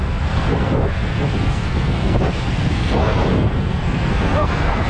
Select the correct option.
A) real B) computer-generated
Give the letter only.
B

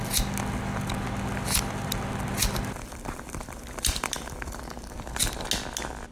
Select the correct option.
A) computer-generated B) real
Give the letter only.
B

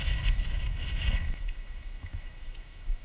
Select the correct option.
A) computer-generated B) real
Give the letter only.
A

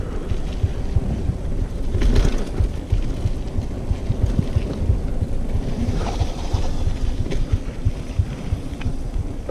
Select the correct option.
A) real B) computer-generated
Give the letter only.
A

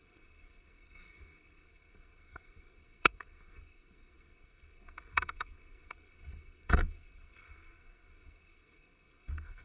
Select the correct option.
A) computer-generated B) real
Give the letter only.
A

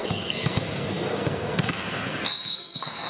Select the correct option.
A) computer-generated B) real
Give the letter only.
A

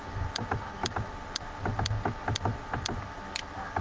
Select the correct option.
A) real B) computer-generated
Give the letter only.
A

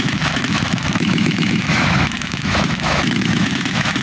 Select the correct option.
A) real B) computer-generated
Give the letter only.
B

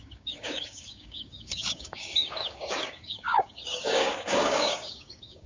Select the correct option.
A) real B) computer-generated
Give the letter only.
B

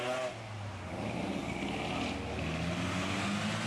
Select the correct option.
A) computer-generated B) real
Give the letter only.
B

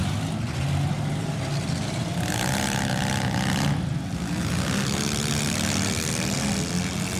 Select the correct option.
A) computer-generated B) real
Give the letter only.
B